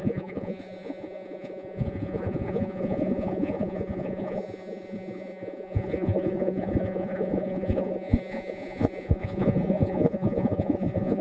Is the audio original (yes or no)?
no